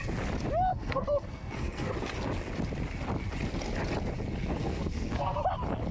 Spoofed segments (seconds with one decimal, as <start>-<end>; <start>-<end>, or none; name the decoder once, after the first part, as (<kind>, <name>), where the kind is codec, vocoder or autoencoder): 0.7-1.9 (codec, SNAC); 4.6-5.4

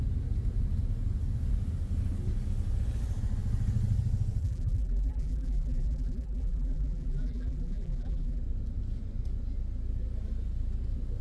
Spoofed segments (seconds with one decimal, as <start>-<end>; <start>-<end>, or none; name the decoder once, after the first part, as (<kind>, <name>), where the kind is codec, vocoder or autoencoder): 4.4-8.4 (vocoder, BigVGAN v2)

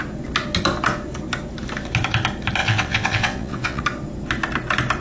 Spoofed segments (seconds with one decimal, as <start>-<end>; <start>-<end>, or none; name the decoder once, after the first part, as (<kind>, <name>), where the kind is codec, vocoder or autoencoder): 2.6-3.8 (vocoder, WaveNeXt)

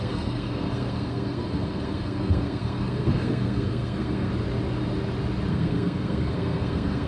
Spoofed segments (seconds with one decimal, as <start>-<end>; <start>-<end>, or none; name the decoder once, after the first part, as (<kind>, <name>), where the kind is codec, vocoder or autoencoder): 0.0-4.3 (codec, SNAC); 5.5-7.1

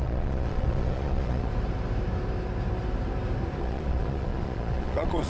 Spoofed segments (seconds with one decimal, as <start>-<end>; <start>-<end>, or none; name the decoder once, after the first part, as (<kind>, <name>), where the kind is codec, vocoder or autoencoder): 0.0-1.5 (vocoder, Vocos); 3.6-5.3